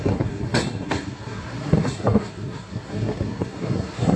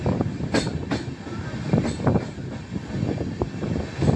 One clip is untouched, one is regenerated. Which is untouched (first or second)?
second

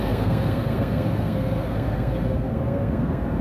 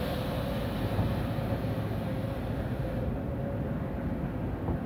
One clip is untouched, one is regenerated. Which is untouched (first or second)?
second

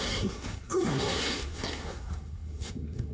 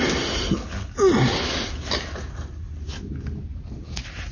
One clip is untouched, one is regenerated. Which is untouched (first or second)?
second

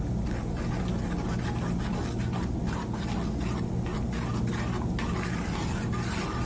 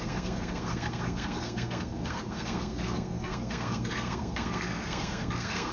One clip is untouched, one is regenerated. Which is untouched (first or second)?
first